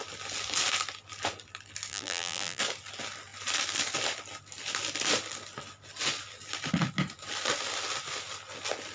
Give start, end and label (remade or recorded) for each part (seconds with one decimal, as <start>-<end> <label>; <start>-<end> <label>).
0.0-1.9 recorded; 1.9-2.6 remade; 2.6-8.9 recorded